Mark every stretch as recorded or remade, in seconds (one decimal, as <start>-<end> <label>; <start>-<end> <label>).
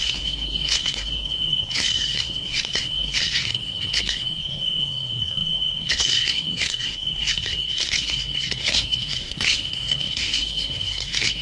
0.0-11.4 remade